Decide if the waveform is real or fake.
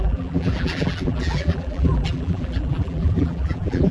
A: fake